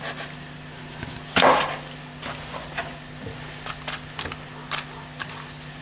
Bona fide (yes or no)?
yes